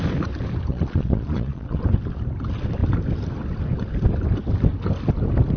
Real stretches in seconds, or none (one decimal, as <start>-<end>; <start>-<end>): 0.0-0.7; 1.8-5.6